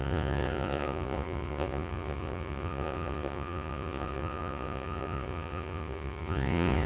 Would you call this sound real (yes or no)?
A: no